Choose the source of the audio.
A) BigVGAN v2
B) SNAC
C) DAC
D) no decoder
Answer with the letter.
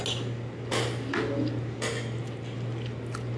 D